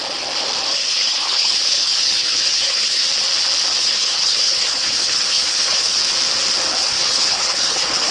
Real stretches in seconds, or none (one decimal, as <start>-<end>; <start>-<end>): 0.0-0.7; 3.0-3.8; 6.0-6.8